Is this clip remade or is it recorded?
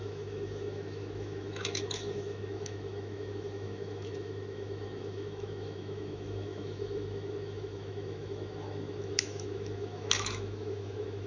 remade